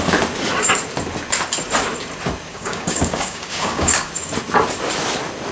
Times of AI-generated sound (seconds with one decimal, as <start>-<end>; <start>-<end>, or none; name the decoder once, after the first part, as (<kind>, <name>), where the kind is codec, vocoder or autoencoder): 2.5-4.1 (codec, DAC)